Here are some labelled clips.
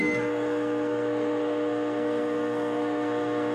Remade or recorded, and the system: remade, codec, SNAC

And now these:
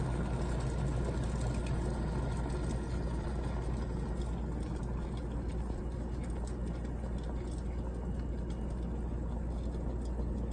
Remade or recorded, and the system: recorded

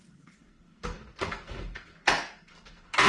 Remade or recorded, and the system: remade, codec, SNAC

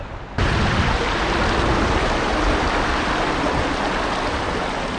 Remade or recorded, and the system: recorded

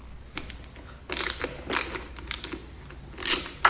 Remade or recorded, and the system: recorded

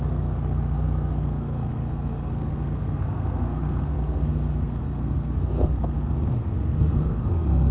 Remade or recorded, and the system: remade, codec, SNAC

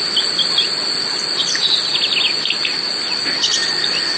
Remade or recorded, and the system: recorded